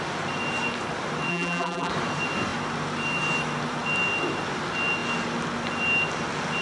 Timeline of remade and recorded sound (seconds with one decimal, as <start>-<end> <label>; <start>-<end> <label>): 0.0-1.3 recorded; 1.3-1.9 remade; 1.9-6.6 recorded